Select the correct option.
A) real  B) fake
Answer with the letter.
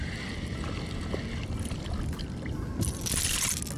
A